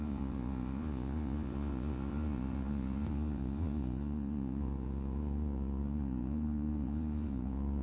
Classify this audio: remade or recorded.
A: remade